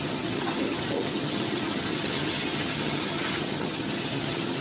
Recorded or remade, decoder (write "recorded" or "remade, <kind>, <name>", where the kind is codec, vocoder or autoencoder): remade, vocoder, HiFi-GAN